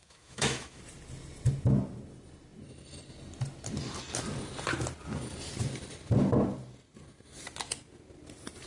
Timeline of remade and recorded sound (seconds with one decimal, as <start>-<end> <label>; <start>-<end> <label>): 0.0-0.8 remade; 0.8-8.7 recorded